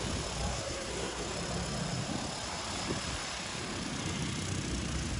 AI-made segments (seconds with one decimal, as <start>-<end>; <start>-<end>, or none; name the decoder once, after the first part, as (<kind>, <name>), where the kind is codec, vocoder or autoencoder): 0.5-1.2 (codec, SNAC)